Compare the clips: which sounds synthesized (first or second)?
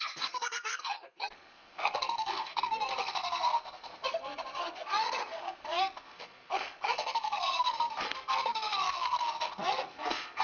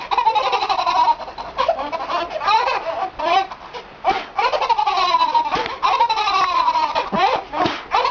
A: first